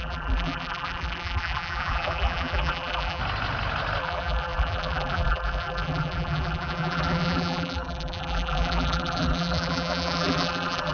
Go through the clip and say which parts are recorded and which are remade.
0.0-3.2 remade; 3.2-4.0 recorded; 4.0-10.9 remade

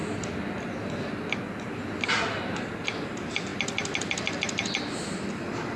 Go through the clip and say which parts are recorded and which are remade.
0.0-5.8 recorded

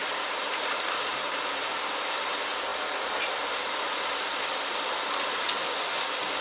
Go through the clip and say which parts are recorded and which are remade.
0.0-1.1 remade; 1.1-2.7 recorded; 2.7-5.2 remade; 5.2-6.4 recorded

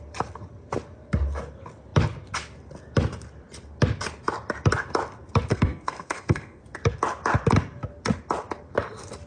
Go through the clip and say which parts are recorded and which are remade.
0.0-5.5 recorded; 5.5-6.6 remade; 6.6-9.3 recorded

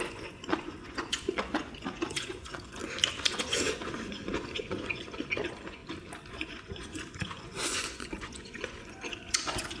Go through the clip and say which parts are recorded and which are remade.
0.0-2.8 remade; 2.8-3.3 recorded; 3.3-5.8 remade; 5.8-6.3 recorded; 6.3-9.8 remade

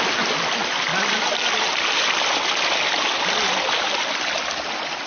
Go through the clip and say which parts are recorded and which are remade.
0.0-5.1 recorded